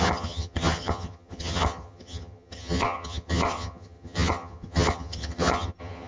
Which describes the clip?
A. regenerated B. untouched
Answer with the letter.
A